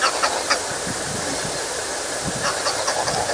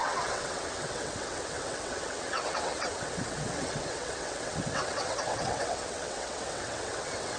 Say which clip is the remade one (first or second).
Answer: second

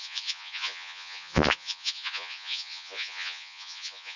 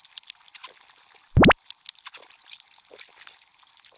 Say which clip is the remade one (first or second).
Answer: first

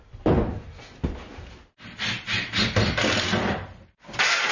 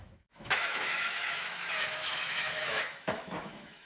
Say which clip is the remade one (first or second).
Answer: second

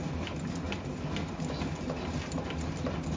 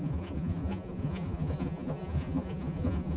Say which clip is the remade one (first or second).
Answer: second